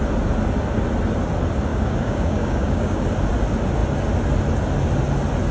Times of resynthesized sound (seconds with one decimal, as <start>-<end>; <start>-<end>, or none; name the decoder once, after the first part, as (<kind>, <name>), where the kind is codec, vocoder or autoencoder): 1.7-3.0 (codec, DAC)